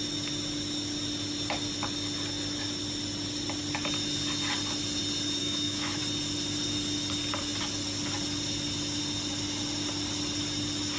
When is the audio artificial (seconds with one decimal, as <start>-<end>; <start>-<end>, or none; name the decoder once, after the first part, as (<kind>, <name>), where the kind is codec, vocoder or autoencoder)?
5.4-6.0 (autoencoder, DAC-VAE)